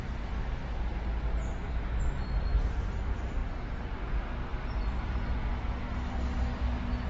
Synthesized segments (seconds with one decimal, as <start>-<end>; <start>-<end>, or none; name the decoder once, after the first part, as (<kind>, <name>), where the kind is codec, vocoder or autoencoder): none